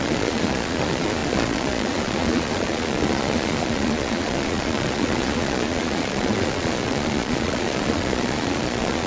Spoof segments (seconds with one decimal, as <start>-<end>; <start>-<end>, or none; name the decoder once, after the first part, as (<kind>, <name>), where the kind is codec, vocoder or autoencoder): 0.0-9.1 (vocoder, Vocos)